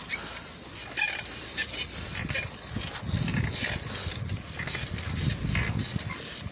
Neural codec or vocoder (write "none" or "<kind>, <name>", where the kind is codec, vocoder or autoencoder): none